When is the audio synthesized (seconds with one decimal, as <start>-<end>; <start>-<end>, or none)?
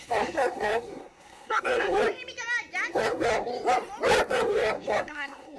0.0-2.0; 2.9-3.5; 4.3-5.6